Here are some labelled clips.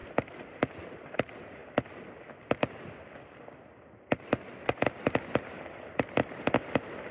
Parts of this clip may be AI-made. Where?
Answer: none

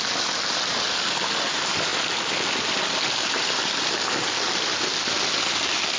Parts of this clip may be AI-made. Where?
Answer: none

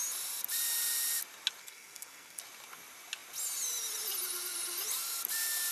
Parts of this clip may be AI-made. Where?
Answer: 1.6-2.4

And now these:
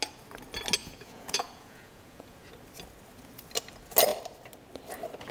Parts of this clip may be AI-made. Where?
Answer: 0.8-2.5

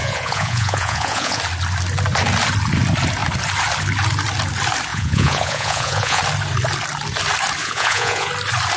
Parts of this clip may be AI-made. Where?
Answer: 0.0-1.4; 4.9-6.2; 7.6-8.3